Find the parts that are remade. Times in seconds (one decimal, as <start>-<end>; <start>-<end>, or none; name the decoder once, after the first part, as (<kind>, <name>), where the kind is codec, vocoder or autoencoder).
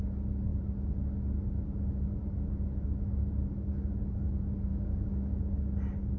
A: 4.7-5.4 (codec, DAC)